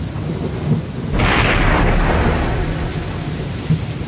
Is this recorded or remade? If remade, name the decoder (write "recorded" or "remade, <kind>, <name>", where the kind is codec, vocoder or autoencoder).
recorded